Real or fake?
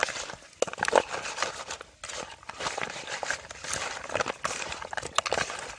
real